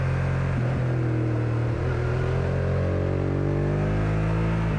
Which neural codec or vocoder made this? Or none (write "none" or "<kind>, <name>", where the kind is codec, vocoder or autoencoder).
none